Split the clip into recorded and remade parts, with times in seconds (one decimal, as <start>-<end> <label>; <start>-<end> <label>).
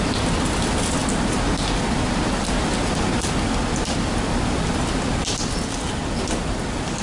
0.0-7.0 recorded